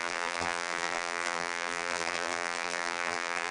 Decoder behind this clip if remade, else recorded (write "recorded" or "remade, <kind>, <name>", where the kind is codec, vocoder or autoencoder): remade, vocoder, BigVGAN v2